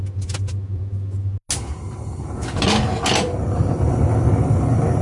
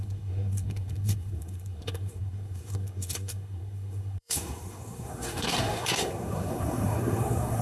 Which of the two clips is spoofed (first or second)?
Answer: second